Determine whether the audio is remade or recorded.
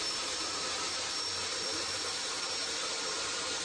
remade